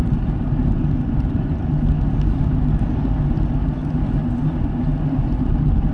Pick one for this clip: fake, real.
real